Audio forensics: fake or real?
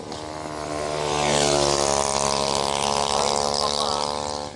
real